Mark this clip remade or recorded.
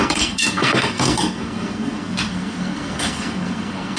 remade